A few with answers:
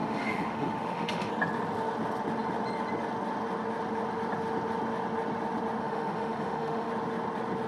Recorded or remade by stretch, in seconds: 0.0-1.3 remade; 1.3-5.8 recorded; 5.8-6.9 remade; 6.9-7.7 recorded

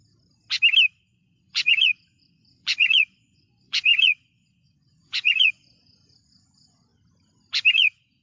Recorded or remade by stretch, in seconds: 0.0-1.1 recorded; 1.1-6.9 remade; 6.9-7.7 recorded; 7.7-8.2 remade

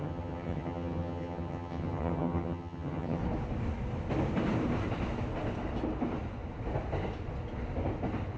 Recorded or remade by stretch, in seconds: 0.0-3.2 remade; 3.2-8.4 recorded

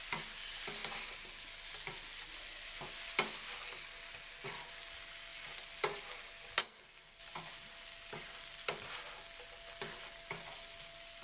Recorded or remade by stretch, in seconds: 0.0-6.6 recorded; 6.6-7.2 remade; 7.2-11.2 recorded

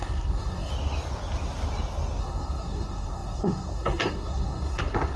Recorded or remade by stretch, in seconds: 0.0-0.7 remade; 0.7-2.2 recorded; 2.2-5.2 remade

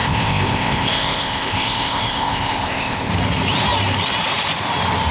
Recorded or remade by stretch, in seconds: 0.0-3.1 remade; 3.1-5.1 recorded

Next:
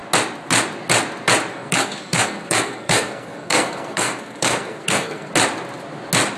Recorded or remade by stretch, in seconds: 0.0-1.5 recorded; 1.5-5.3 remade; 5.3-6.4 recorded

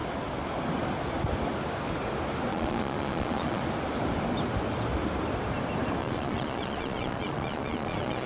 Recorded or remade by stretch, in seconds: 0.0-2.5 recorded; 2.5-3.6 remade; 3.6-6.0 recorded; 6.0-8.3 remade